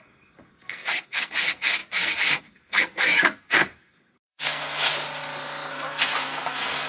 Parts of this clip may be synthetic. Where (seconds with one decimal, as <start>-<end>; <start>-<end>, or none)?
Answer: 0.0-4.9; 5.7-6.9